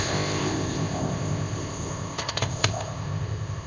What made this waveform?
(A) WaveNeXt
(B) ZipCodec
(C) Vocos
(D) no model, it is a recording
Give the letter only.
B